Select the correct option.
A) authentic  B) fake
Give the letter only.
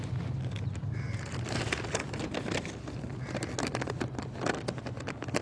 A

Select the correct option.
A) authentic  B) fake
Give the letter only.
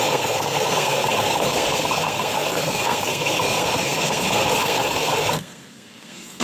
B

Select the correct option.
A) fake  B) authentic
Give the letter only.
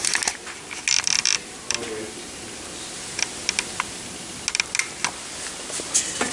B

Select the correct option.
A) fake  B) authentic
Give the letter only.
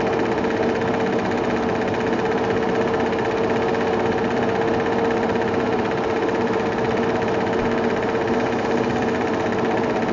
B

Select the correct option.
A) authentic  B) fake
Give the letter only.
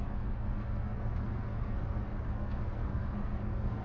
B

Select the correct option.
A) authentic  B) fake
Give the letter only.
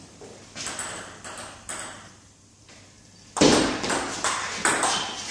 A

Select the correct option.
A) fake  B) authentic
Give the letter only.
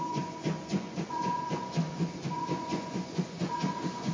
A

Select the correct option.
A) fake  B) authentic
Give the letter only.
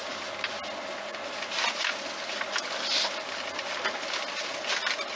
B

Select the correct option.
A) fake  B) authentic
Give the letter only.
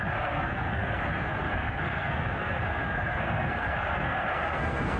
A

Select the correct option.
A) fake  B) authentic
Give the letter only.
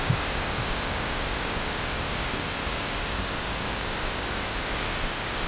A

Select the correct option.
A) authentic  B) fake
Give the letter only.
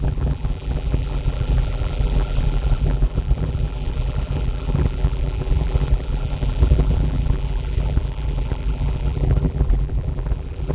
B